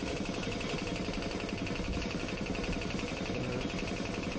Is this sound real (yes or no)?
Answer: no